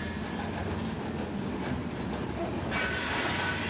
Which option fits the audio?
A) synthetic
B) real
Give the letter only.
B